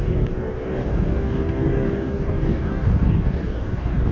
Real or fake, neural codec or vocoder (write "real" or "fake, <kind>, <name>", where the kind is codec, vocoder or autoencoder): fake, codec, DAC